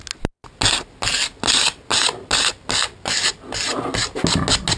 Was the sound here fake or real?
real